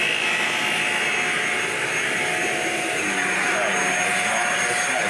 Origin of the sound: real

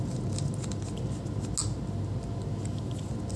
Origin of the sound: real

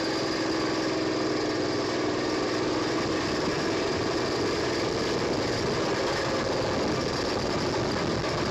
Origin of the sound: real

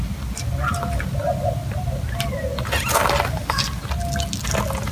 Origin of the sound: real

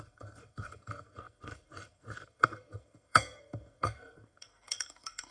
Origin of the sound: fake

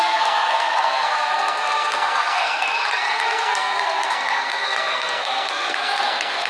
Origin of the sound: fake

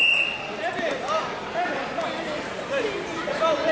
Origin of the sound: real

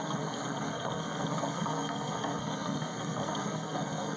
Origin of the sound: fake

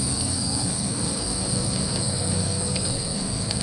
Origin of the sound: fake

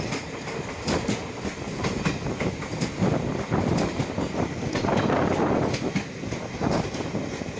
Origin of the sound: real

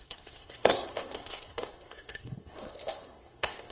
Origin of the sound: fake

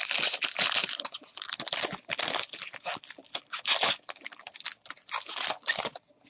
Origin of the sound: real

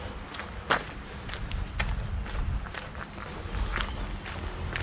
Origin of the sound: real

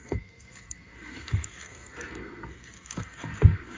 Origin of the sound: fake